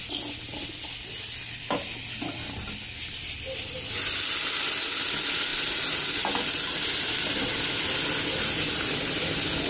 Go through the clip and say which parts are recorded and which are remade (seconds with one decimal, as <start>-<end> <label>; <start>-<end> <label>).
0.0-9.7 recorded